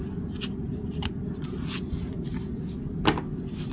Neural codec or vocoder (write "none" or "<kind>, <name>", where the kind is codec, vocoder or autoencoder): vocoder, BigVGAN v2